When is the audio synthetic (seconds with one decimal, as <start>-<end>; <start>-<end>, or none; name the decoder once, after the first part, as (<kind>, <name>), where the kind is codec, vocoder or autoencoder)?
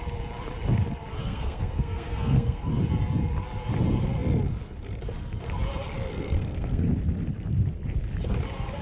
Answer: 1.2-2.7 (codec, SNAC); 6.1-6.9